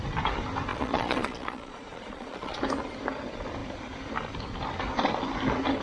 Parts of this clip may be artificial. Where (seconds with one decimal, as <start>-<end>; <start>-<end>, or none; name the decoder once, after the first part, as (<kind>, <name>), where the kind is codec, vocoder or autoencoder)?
0.7-2.6 (vocoder, Vocos)